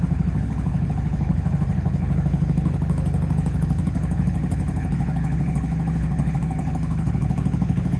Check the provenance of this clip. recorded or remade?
remade